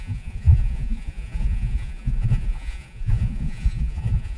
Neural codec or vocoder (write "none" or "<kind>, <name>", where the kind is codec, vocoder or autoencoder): vocoder, Vocos